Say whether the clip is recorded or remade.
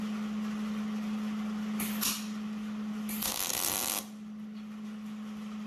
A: recorded